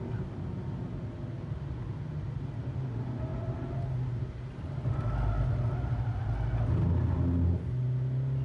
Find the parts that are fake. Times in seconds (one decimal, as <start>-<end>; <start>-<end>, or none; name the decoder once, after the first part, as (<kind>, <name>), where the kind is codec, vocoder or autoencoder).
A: none